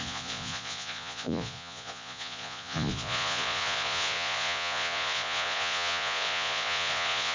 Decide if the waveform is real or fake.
fake